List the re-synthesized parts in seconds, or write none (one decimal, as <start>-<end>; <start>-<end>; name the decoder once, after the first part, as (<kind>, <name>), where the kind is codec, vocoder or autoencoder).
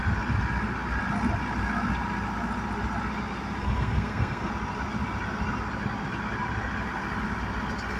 3.6-4.5 (codec, SNAC)